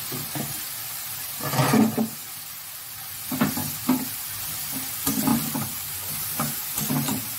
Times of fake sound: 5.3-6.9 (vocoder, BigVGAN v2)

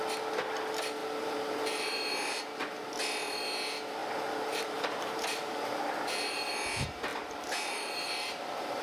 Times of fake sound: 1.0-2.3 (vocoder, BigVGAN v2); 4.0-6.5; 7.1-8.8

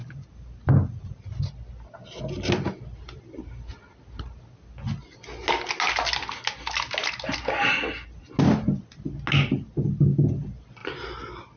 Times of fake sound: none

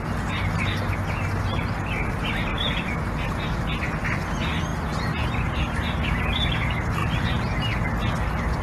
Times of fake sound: 2.5-3.3 (vocoder, BigVGAN v2); 7.0-7.6

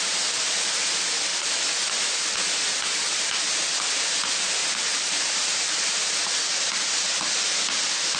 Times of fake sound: 4.6-5.9 (vocoder, BigVGAN v2)